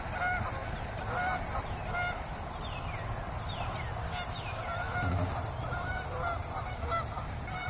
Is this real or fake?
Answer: fake